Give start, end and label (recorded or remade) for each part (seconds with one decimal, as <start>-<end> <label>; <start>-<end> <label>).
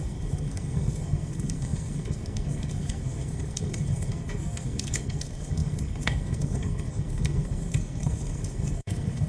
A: 0.0-9.3 remade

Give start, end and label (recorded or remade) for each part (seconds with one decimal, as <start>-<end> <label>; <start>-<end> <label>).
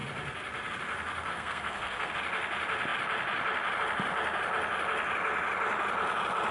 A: 0.0-1.3 recorded; 1.3-2.1 remade; 2.1-6.5 recorded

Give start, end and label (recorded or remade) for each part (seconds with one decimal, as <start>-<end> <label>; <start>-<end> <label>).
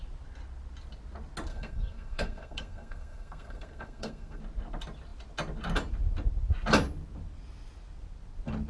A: 0.0-1.5 recorded; 1.5-4.4 remade; 4.4-8.7 recorded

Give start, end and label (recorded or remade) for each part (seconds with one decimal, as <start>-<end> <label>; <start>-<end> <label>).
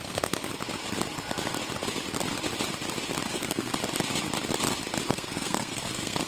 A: 0.0-0.5 remade; 0.5-3.3 recorded; 3.3-3.7 remade; 3.7-5.1 recorded; 5.1-6.3 remade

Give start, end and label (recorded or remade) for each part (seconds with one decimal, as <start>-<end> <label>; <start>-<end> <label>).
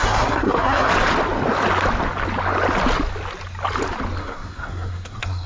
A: 0.0-0.9 remade; 0.9-4.2 recorded; 4.2-5.5 remade